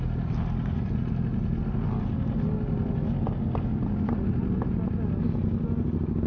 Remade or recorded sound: recorded